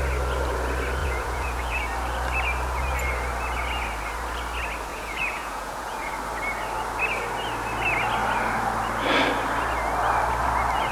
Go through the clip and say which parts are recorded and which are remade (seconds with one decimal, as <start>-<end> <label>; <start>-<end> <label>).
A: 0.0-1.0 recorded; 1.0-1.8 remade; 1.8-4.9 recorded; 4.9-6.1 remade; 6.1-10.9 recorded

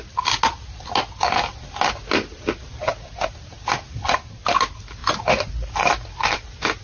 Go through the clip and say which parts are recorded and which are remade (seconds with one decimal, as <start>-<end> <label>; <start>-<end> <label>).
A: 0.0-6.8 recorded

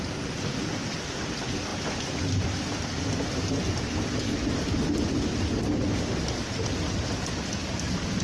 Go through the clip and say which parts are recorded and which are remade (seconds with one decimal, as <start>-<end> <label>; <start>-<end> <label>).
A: 0.0-8.2 recorded

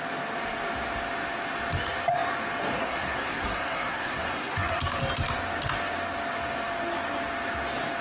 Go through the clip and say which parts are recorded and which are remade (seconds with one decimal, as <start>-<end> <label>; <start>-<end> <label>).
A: 0.0-2.8 recorded; 2.8-4.8 remade; 4.8-8.0 recorded

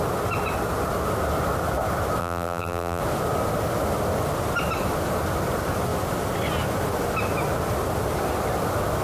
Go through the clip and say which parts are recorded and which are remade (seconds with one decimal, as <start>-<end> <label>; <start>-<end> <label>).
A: 0.0-2.2 recorded; 2.2-3.0 remade; 3.0-9.0 recorded

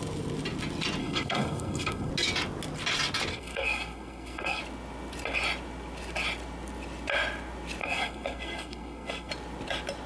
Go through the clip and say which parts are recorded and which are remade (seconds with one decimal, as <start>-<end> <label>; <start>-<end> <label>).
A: 0.0-1.0 recorded; 1.0-2.1 remade; 2.1-3.3 recorded; 3.3-4.6 remade; 4.6-7.8 recorded; 7.8-9.3 remade; 9.3-10.1 recorded